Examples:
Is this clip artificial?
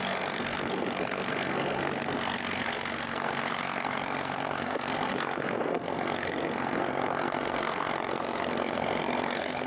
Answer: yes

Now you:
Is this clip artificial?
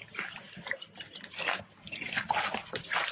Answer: no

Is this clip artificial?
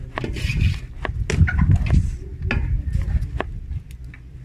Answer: no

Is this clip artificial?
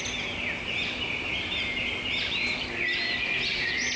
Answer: no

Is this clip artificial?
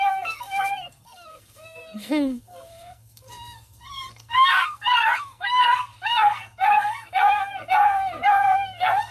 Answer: yes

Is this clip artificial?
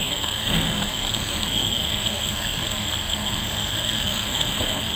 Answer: yes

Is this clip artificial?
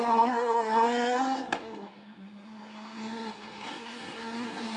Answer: yes